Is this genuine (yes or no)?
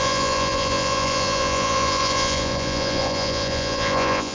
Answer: no